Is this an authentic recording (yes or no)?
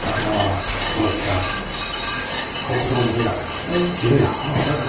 yes